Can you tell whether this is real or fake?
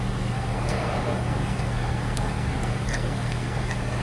fake